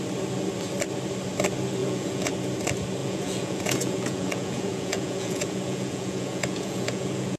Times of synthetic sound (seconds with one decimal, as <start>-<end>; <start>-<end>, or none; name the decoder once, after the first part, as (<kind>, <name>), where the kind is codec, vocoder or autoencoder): 1.8-2.3 (vocoder, Vocos); 3.0-7.4